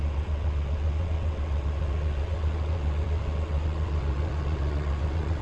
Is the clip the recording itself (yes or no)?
no